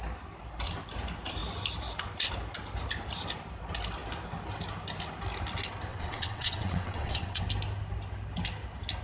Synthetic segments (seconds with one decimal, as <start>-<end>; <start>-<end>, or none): 5.9-7.4